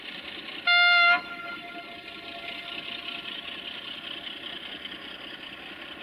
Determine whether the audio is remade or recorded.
recorded